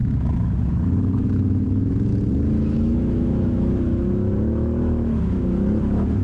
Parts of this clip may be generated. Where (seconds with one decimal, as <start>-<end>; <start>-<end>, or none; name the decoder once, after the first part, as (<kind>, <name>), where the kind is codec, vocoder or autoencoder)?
0.0-6.2 (autoencoder, DAC-VAE)